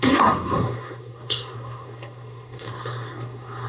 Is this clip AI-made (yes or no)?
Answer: yes